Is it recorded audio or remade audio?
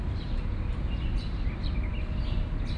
recorded